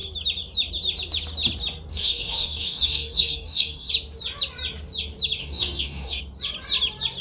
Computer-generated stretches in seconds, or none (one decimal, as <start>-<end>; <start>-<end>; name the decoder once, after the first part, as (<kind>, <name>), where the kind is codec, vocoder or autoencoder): 1.9-3.9 (codec, DAC); 5.4-6.2

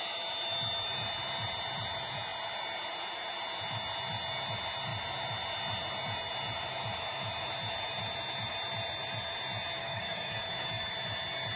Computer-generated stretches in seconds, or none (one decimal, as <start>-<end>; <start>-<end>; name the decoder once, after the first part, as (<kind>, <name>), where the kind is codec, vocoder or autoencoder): 9.8-10.9 (codec, DAC)

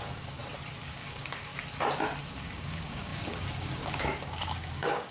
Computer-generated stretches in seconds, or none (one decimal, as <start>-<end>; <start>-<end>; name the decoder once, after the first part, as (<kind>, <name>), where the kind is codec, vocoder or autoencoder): 0.0-0.4 (codec, DAC); 0.9-1.5; 2.2-5.1

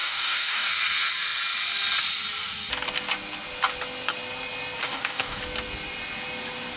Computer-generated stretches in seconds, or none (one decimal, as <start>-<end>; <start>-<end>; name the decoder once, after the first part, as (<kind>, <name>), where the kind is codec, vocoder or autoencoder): 0.0-0.7 (codec, DAC); 4.8-5.4